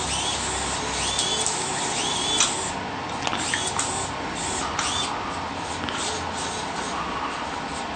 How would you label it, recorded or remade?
recorded